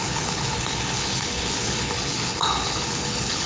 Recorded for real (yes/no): no